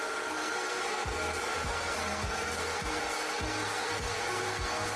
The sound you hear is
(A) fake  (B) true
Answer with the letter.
A